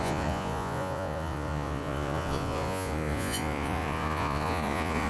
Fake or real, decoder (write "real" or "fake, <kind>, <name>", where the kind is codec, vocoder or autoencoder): fake, vocoder, Vocos